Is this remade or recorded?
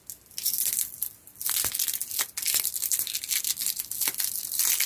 recorded